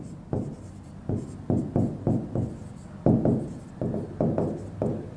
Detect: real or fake real